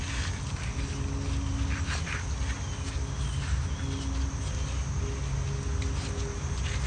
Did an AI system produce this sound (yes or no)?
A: no